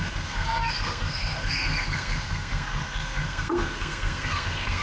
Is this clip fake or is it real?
fake